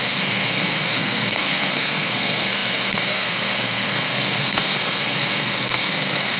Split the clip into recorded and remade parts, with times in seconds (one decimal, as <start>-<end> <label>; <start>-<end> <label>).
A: 0.0-6.4 remade

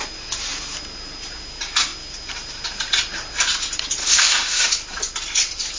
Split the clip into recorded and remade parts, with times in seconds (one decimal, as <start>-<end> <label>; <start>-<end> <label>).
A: 0.0-4.0 recorded; 4.0-4.7 remade; 4.7-5.8 recorded

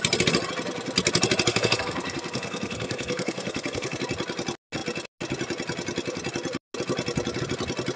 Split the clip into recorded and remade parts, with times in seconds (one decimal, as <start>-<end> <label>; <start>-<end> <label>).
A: 0.0-1.5 recorded; 1.5-4.0 remade; 4.0-8.0 recorded

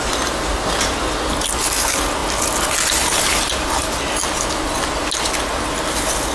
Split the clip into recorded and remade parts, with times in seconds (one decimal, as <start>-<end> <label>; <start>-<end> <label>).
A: 0.0-6.3 recorded

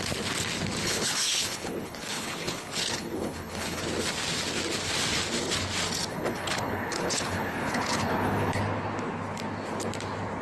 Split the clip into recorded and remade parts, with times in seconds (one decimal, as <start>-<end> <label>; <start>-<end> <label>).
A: 0.0-0.8 recorded; 0.8-3.8 remade; 3.8-6.1 recorded; 6.1-8.6 remade; 8.6-10.4 recorded

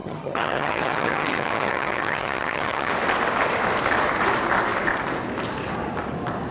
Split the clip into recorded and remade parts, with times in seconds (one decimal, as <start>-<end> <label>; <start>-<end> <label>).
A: 0.0-2.9 remade; 2.9-6.5 recorded

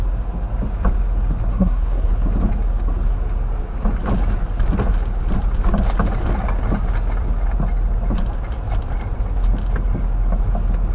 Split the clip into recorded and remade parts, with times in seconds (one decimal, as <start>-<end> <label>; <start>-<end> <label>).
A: 0.0-1.5 recorded; 1.5-2.1 remade; 2.1-10.9 recorded

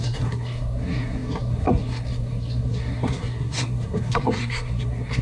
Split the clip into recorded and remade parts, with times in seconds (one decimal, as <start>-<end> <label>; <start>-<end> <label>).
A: 0.0-5.2 remade